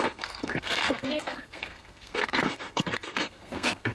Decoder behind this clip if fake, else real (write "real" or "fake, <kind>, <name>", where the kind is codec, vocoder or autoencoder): fake, codec, SNAC